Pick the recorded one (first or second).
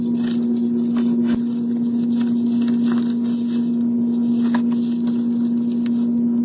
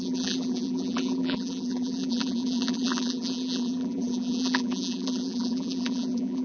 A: first